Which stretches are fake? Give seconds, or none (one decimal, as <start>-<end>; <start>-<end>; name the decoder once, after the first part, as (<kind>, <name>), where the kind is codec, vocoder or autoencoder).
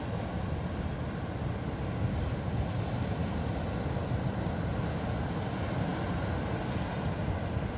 none